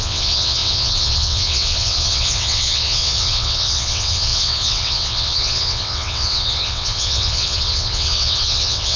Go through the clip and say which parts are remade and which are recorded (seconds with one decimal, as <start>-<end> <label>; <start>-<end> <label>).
0.0-9.0 remade